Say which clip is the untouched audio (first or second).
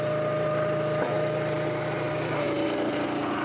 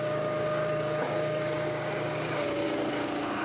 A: first